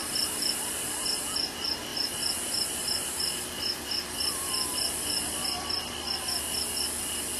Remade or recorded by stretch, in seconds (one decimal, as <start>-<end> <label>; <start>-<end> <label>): 0.0-0.6 remade; 0.6-1.9 recorded; 1.9-5.9 remade; 5.9-7.4 recorded